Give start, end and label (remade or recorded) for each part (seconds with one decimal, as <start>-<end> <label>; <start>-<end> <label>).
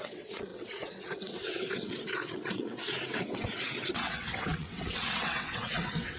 0.0-6.2 remade